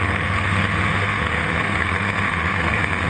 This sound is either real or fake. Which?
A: fake